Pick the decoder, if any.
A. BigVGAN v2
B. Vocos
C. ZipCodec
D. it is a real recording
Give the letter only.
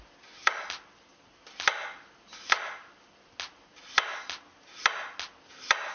D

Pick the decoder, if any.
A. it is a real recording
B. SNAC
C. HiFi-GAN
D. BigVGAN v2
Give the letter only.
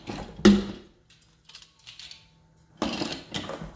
A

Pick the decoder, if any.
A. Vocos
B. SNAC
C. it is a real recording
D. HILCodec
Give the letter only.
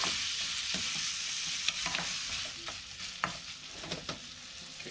C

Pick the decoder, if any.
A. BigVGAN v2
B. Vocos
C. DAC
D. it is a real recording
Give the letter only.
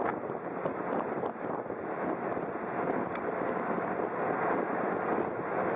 D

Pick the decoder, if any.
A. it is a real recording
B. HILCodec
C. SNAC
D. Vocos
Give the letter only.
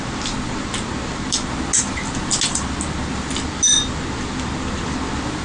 A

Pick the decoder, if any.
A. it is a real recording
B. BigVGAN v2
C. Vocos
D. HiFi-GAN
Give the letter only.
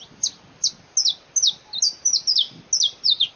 A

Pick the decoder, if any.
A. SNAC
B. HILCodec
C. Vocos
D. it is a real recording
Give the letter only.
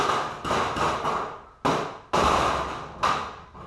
D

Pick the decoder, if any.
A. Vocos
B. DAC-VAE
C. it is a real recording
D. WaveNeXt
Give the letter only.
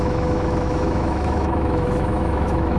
B